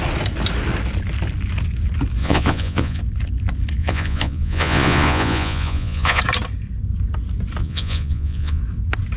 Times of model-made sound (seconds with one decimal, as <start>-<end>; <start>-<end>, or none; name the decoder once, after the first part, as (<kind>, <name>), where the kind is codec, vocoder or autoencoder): 2.2-3.0 (vocoder, Vocos); 3.8-6.2; 7.6-8.6